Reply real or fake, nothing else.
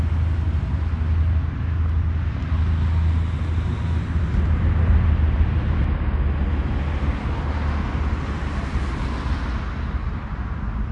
real